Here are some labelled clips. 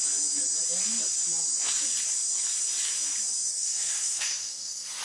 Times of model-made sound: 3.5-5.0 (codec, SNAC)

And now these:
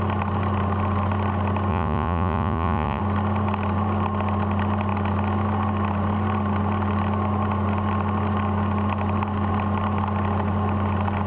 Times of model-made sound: 1.7-3.0 (vocoder, Vocos)

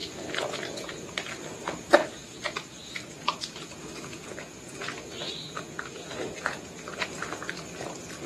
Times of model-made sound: 0.0-0.9 (vocoder, Vocos); 2.0-7.0